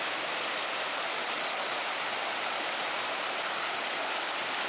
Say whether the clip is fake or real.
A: real